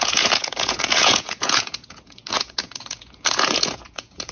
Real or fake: fake